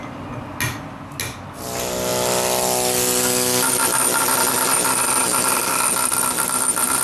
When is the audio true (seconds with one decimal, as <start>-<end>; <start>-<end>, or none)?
0.0-7.0